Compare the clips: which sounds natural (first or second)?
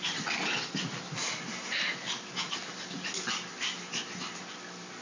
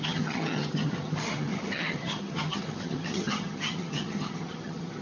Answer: first